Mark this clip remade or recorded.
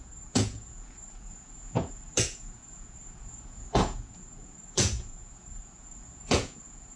remade